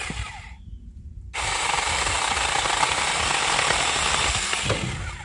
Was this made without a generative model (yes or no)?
yes